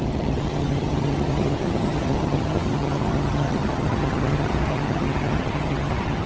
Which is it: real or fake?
fake